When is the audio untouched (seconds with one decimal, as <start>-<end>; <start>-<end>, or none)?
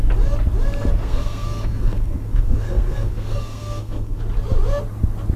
0.0-1.0; 4.2-5.4